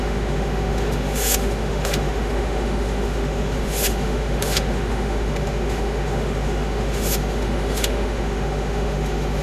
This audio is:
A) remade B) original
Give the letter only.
A